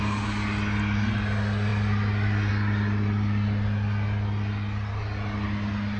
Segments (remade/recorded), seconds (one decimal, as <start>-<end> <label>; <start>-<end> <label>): 0.0-6.0 recorded